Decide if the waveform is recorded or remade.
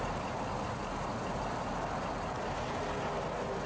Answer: recorded